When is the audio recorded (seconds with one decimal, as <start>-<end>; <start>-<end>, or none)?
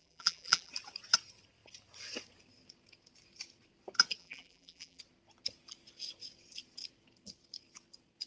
0.7-4.2; 5.0-8.3